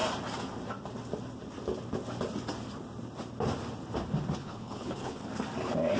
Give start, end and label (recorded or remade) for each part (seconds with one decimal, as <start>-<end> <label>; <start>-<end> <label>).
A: 0.0-4.4 recorded; 4.4-5.3 remade; 5.3-6.0 recorded